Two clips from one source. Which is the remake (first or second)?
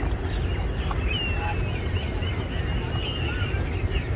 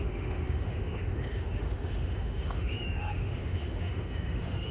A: second